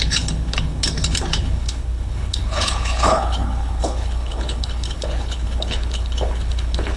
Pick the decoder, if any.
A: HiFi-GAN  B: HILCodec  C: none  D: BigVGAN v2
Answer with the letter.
B